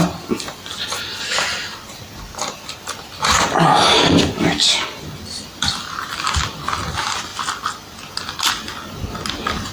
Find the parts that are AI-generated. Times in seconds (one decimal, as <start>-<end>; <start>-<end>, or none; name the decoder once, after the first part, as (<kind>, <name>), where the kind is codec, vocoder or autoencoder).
none